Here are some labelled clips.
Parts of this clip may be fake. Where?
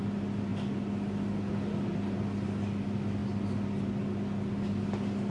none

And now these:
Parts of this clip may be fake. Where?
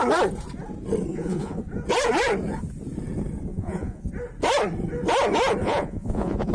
1.1-1.6 (vocoder, Vocos); 3.5-4.1; 5.6-6.5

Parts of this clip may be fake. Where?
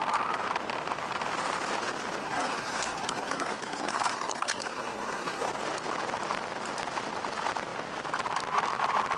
2.2-5.5 (codec, SNAC)